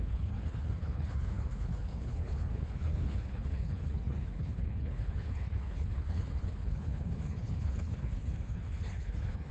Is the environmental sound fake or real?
fake